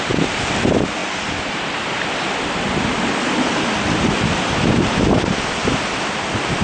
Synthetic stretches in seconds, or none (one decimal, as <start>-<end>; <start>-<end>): 0.0-5.6